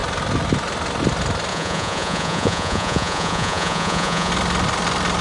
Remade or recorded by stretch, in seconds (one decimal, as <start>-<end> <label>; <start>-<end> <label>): 0.0-1.5 recorded; 1.5-4.3 remade; 4.3-5.2 recorded